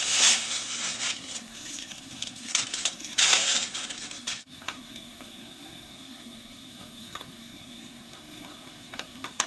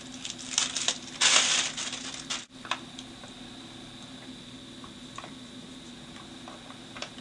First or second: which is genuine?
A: second